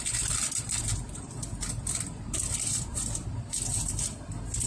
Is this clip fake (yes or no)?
yes